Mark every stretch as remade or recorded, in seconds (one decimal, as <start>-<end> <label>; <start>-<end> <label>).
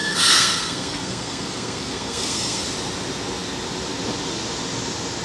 0.0-2.6 remade; 2.6-5.2 recorded